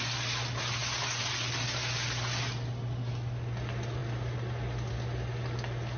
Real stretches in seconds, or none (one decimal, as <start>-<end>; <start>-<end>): 0.0-6.0